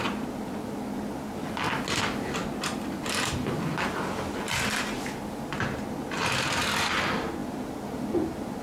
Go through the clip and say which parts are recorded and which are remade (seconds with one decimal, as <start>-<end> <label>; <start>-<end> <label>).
0.0-8.6 recorded